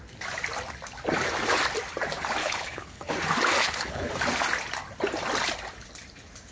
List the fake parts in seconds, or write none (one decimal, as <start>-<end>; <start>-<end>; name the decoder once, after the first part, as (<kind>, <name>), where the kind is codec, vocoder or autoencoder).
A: 2.4-3.1 (codec, HILCodec); 3.6-4.1